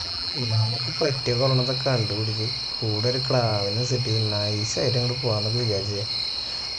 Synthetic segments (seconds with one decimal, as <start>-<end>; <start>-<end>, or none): 0.0-1.2